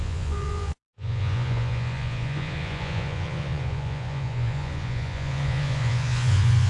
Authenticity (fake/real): fake